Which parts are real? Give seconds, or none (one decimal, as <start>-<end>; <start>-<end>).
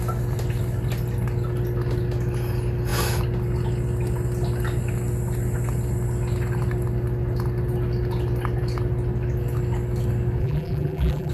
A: 0.0-10.4